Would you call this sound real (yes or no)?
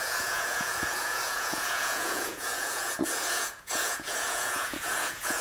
no